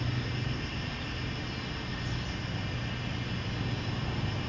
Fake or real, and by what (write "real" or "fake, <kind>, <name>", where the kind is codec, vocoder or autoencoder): real